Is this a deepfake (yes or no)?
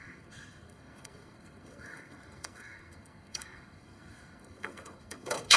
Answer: yes